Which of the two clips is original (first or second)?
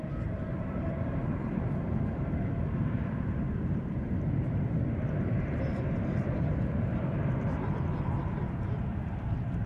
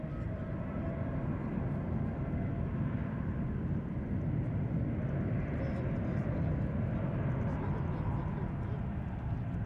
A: second